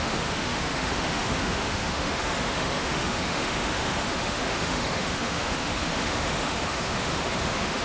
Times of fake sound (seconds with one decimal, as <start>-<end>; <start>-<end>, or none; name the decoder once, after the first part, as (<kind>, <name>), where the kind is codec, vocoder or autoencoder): 0.0-7.8 (autoencoder, DAC-VAE)